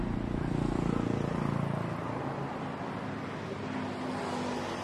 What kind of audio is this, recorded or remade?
recorded